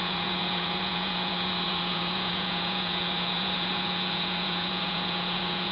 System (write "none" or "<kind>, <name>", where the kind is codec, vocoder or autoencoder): vocoder, Vocos